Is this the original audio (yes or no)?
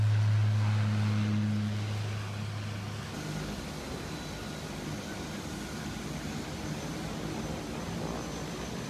yes